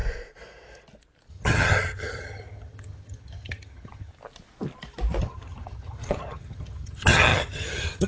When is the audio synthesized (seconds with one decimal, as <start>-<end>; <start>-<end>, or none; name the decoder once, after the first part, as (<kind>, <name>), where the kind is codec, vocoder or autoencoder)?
1.3-4.1 (vocoder, HiFi-GAN); 5.2-8.1